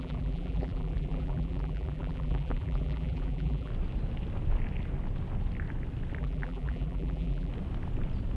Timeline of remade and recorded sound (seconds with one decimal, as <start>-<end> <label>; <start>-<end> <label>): 0.0-3.7 remade; 3.7-6.2 recorded; 6.2-7.5 remade; 7.5-8.4 recorded